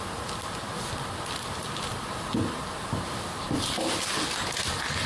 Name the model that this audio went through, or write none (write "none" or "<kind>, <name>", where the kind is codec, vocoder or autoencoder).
none